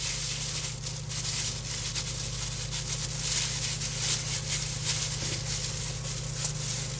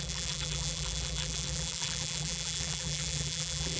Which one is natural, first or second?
first